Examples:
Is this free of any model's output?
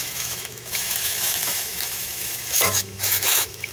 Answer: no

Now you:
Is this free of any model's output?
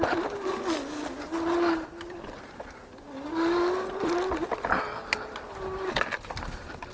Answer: yes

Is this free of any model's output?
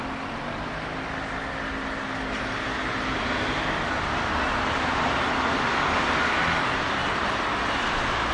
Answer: yes